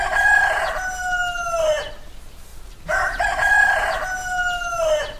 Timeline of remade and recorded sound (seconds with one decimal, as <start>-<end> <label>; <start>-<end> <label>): 0.0-5.2 recorded